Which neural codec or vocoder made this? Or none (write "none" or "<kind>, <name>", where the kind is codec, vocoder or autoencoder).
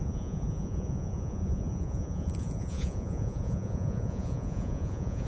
vocoder, Vocos